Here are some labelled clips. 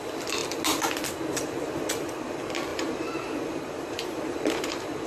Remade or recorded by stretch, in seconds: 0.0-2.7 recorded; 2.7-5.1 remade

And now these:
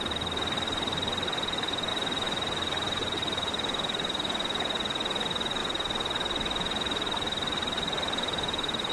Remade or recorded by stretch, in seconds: 0.0-1.9 recorded; 1.9-3.5 remade; 3.5-8.9 recorded

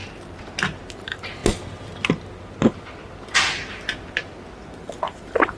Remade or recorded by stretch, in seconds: 0.0-0.9 recorded; 0.9-1.4 remade; 1.4-4.8 recorded; 4.8-5.6 remade

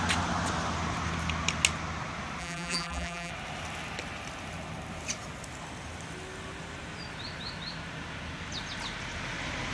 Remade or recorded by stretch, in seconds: 0.0-2.4 recorded; 2.4-3.3 remade; 3.3-9.7 recorded

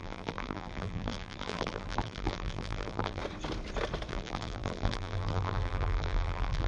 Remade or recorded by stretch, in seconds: 0.0-3.2 remade; 3.2-4.1 recorded; 4.1-6.7 remade

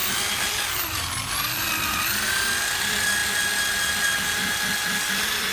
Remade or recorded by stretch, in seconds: 0.0-5.5 recorded

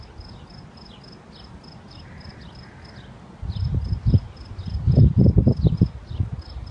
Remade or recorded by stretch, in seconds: 0.0-6.7 recorded

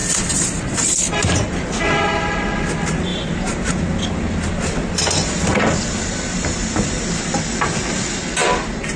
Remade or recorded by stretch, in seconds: 0.0-3.1 recorded; 3.1-3.8 remade; 3.8-9.0 recorded